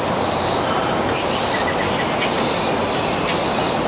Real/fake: real